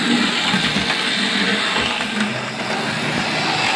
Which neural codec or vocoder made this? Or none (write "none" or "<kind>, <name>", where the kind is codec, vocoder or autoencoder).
none